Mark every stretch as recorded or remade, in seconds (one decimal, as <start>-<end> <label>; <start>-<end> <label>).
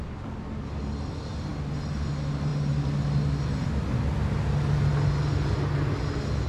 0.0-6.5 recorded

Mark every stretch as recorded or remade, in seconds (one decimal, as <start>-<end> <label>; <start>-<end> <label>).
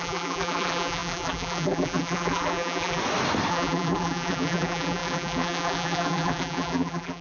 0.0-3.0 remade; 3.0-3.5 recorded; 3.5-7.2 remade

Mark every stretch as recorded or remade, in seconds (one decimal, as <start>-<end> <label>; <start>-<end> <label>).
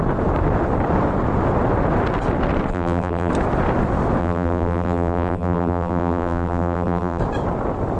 0.0-2.7 recorded; 2.7-3.3 remade; 3.3-4.2 recorded; 4.2-7.2 remade; 7.2-8.0 recorded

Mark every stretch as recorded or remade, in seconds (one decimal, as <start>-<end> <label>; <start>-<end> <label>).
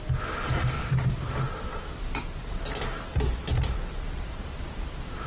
0.0-1.7 recorded; 1.7-2.6 remade; 2.6-3.1 recorded; 3.1-3.8 remade; 3.8-5.3 recorded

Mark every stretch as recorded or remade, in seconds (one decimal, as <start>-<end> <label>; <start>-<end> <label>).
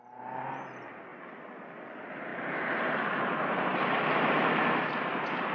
0.0-5.5 recorded